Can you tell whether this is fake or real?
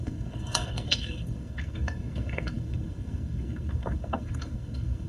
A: fake